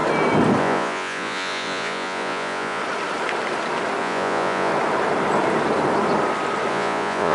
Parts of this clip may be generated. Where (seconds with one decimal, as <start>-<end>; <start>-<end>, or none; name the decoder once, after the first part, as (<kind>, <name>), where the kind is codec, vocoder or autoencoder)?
0.6-2.8 (vocoder, Vocos); 4.0-4.7; 6.7-7.3